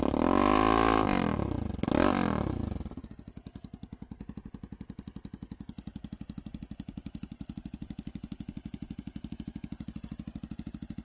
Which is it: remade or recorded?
recorded